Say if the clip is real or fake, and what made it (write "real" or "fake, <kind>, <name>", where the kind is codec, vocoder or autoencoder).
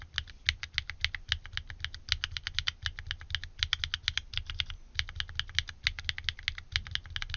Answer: real